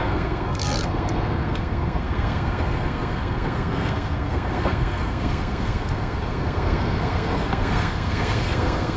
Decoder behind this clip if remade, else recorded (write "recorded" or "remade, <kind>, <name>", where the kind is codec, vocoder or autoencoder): remade, codec, SNAC